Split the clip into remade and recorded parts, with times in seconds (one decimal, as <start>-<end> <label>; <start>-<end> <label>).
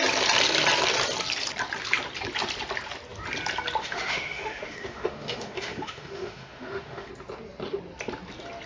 0.0-3.8 recorded; 3.8-7.1 remade; 7.1-8.7 recorded